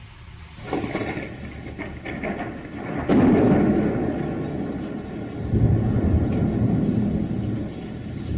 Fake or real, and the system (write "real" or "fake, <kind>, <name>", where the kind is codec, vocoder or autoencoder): real